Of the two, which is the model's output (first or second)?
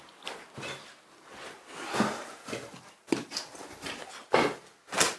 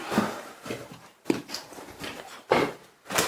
second